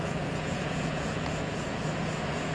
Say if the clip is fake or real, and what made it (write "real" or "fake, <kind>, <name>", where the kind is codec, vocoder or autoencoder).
fake, vocoder, Vocos